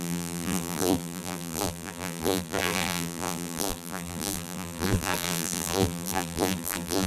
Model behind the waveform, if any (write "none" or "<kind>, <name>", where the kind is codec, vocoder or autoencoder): vocoder, BigVGAN v2